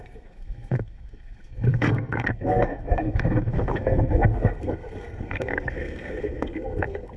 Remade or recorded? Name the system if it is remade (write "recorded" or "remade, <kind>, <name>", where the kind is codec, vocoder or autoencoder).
remade, codec, SNAC